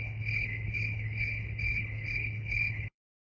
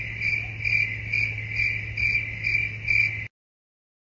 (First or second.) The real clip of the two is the second